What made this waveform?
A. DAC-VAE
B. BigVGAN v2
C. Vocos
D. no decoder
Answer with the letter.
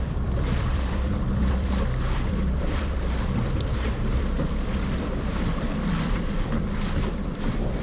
B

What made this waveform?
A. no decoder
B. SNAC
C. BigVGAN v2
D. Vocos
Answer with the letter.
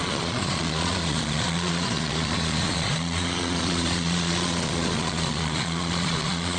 D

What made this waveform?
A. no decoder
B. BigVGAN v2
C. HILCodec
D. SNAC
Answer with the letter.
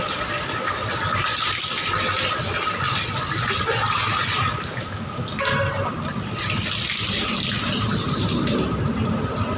A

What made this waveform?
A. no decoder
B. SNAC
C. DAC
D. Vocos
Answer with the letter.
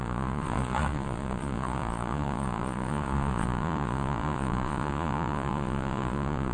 D